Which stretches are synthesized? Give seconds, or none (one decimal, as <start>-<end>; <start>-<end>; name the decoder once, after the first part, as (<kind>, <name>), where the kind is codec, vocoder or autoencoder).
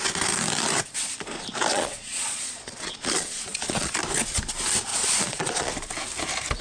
1.7-4.0 (vocoder, Vocos); 4.9-5.7